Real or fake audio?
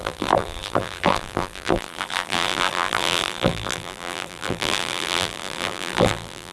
fake